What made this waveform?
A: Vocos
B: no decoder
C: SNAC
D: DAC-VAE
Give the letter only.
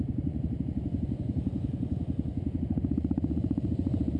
A